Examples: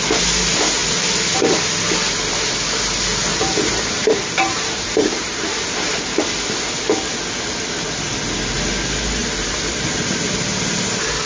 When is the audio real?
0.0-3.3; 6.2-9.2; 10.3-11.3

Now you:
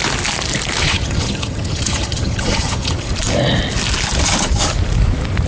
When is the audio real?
0.0-0.8; 3.1-5.5

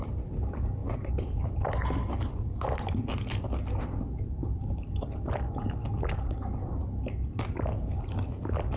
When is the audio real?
0.0-0.8; 5.3-8.8

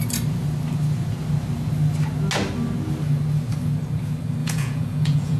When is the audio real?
0.0-4.4

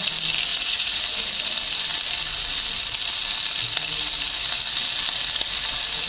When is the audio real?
0.0-0.5; 1.0-6.1